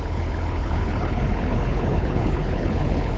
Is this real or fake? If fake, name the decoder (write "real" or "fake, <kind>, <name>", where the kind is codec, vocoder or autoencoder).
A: fake, codec, HILCodec